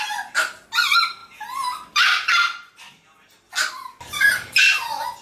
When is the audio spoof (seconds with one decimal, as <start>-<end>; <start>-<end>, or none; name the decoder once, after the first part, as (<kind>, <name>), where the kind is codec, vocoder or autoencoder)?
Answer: none